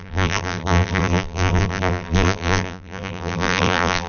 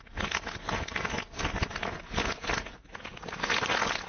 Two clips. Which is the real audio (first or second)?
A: second